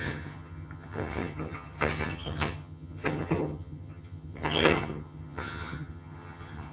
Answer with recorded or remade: remade